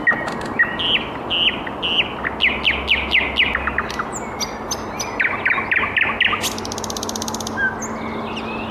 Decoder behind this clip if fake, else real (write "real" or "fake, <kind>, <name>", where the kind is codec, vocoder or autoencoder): real